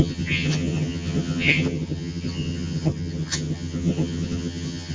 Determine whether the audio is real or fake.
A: fake